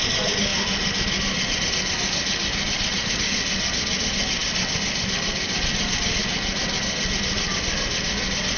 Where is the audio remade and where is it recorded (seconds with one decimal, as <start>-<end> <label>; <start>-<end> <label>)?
0.0-8.6 recorded